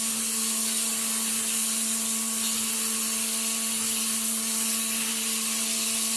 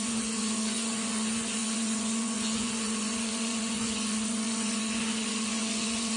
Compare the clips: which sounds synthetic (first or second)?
second